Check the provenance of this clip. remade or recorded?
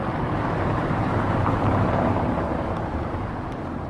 remade